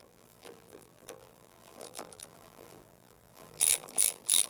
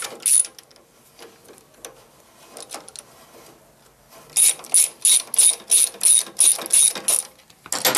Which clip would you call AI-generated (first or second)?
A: first